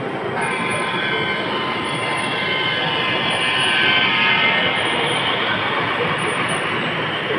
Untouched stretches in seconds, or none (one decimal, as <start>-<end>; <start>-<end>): 0.0-7.4